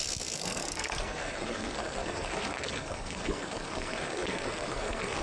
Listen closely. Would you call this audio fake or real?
fake